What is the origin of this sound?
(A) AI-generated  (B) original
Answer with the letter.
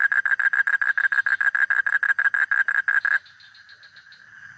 B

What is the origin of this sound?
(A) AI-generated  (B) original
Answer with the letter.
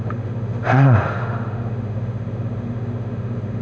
A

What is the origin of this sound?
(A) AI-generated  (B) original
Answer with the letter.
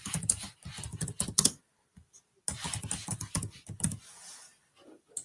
B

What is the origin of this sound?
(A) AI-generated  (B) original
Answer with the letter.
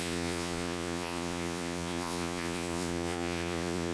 A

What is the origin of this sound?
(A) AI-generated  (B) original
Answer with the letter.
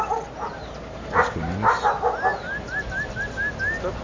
B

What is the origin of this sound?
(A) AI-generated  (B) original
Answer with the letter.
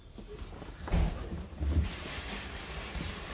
A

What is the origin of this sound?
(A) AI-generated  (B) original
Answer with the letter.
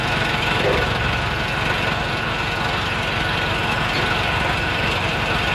B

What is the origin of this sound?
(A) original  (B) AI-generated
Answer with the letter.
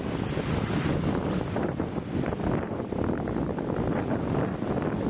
A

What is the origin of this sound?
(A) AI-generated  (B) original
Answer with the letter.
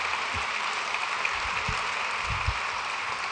B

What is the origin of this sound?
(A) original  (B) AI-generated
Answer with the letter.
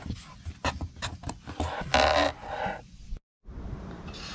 A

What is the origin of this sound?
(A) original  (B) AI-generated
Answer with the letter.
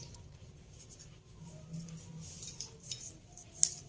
A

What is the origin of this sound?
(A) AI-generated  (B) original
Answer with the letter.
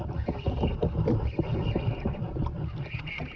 B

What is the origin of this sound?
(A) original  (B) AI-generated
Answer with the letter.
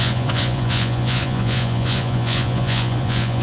B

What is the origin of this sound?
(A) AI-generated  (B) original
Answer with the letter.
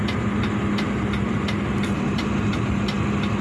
B